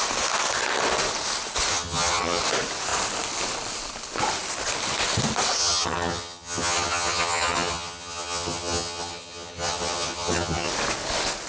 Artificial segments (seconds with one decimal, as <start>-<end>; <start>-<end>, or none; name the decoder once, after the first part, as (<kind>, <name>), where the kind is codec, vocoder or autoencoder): 1.7-2.4 (vocoder, HiFi-GAN); 5.6-10.7